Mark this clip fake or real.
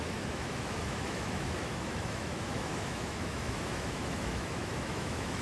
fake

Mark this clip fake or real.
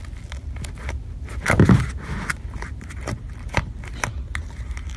real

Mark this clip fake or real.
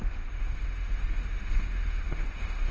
fake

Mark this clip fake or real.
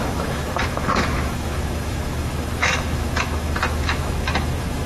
fake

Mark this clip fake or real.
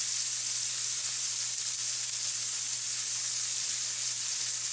real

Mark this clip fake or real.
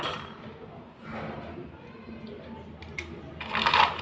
real